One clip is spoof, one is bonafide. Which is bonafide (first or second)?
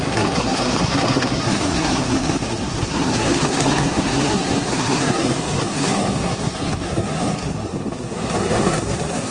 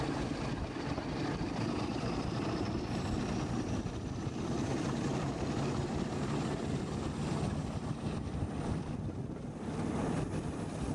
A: second